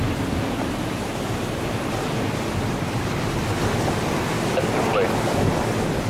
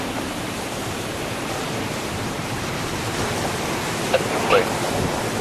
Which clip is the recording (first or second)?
first